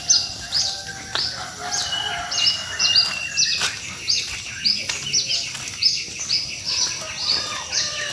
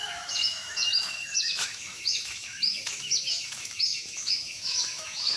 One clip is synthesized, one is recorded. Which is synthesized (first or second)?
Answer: second